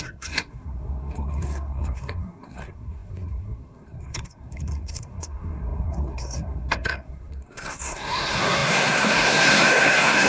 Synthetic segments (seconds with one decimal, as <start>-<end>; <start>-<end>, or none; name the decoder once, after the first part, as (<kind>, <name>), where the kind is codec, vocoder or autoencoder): 0.0-10.3 (codec, SNAC)